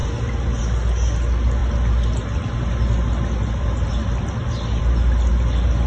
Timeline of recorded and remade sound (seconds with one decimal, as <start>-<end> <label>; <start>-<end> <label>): 0.0-5.9 recorded